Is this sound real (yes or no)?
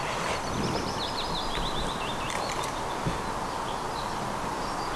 yes